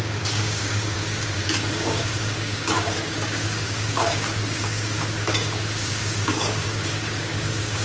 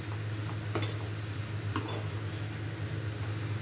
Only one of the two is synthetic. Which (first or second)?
first